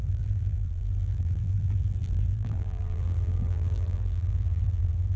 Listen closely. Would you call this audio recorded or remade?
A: remade